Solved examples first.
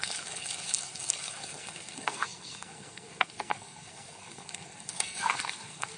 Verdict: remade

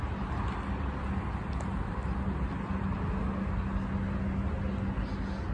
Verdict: recorded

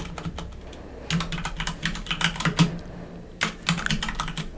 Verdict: recorded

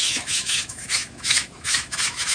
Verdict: remade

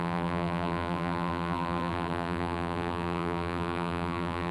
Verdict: remade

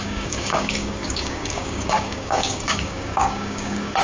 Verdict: remade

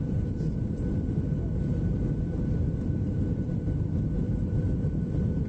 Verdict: remade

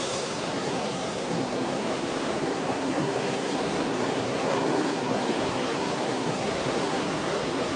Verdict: remade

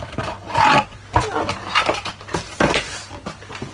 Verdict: recorded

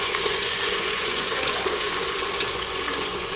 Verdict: remade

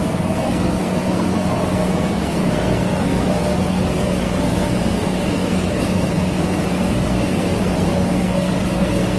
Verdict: remade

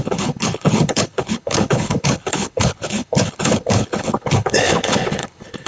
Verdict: remade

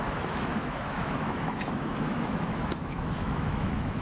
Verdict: remade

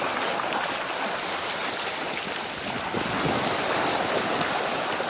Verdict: recorded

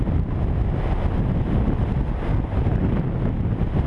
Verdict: recorded